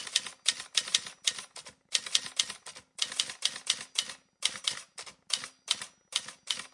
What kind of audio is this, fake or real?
real